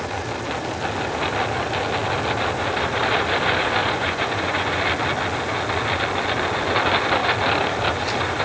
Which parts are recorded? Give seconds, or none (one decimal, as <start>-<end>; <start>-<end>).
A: 0.0-3.8; 4.8-8.4